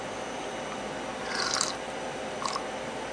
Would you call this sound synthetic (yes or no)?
no